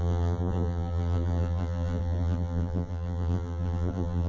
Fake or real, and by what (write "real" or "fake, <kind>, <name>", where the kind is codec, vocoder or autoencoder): fake, vocoder, BigVGAN v2